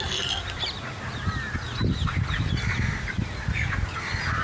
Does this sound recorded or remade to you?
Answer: recorded